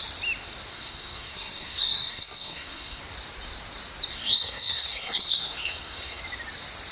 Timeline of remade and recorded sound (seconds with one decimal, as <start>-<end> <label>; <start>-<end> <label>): 0.0-0.7 recorded; 0.7-3.0 remade; 3.0-4.1 recorded; 4.1-6.2 remade; 6.2-6.9 recorded